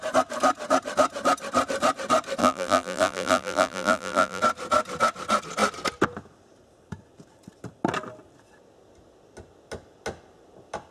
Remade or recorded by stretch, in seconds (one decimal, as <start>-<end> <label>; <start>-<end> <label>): 0.0-2.4 recorded; 2.4-4.4 remade; 4.4-10.9 recorded